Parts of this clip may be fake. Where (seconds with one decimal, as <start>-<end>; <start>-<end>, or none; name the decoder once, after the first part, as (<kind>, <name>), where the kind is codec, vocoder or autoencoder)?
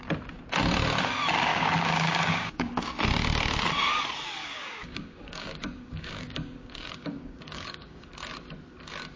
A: 1.5-3.0 (codec, DAC); 4.4-8.1